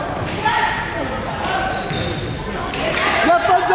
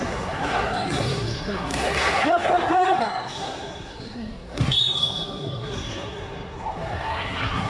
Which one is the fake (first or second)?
second